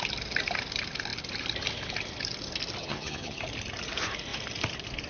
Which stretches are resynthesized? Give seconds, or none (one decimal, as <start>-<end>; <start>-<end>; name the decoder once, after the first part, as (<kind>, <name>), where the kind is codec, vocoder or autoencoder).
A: 2.8-3.4 (vocoder, HiFi-GAN)